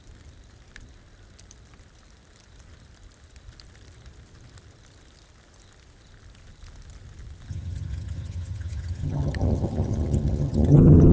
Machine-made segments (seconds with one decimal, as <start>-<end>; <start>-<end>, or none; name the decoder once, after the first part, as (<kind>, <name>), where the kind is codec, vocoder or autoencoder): 7.5-11.1 (vocoder, HiFi-GAN)